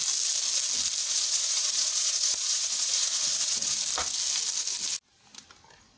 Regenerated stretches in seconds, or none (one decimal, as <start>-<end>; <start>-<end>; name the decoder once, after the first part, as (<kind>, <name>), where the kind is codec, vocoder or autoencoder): 1.0-3.8 (vocoder, Vocos)